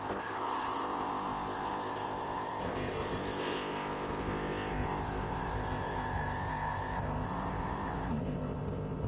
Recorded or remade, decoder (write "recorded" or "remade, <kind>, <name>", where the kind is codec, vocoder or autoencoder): remade, codec, ZipCodec